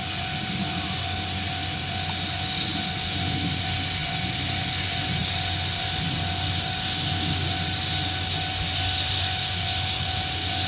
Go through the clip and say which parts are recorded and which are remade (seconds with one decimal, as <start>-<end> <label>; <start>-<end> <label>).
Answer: 0.0-10.7 recorded